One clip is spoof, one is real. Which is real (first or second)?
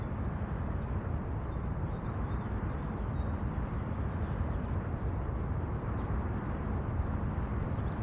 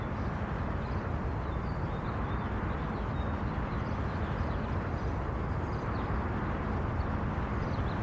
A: second